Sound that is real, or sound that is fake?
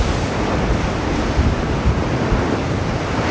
real